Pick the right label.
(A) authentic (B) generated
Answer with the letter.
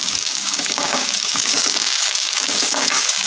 B